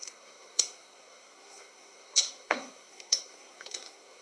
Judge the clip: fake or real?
fake